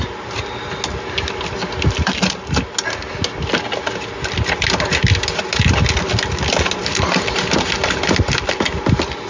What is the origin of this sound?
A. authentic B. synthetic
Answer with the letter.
A